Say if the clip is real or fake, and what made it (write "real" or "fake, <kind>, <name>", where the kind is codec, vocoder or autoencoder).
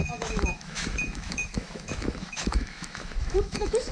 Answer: fake, autoencoder, DAC-VAE